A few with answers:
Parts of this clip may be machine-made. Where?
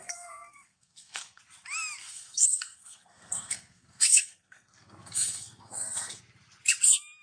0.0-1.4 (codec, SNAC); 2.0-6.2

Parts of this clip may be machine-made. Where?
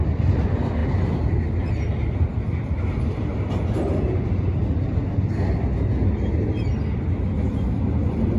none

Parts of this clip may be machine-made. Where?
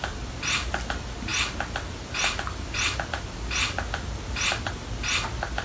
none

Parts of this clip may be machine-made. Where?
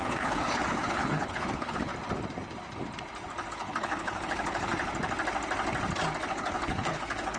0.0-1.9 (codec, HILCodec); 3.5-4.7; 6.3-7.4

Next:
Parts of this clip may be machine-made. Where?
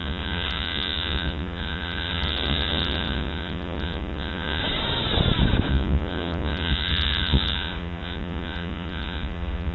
0.0-4.6 (vocoder, Vocos); 5.7-9.7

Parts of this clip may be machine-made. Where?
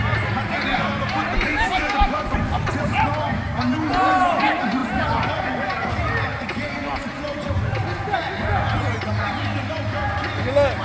1.5-2.2 (autoencoder, DAC-VAE)